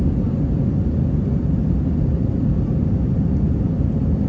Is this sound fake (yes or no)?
no